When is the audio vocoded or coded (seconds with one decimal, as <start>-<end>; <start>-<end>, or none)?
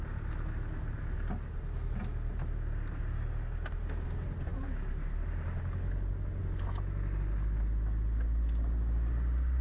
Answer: none